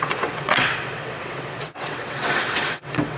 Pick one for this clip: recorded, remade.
remade